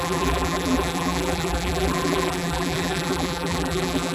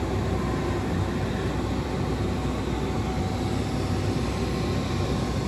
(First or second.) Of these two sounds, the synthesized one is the first